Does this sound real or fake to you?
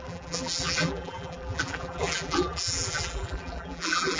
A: fake